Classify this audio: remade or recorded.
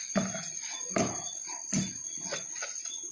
recorded